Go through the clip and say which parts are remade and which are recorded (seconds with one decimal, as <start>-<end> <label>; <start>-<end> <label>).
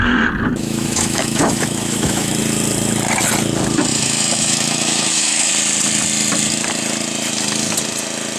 0.0-0.6 recorded; 0.6-2.3 remade; 2.3-3.9 recorded; 3.9-5.5 remade; 5.5-8.4 recorded